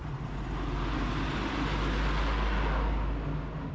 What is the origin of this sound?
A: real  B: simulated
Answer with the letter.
A